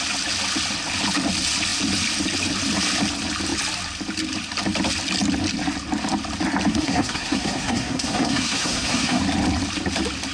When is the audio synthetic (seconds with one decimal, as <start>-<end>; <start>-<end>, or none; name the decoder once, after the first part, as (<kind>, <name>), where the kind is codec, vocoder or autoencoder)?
6.7-9.2 (codec, SNAC)